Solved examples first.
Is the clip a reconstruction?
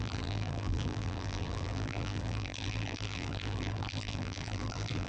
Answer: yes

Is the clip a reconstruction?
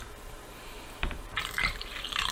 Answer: yes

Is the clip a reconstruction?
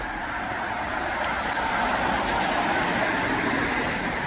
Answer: yes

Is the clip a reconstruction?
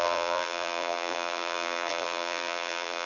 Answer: yes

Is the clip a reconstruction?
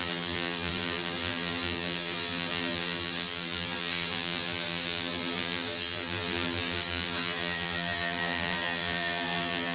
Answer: yes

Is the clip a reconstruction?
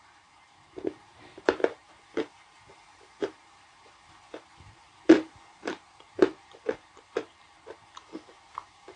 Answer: yes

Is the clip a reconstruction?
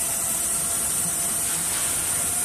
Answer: no